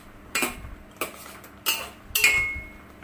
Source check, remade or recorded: recorded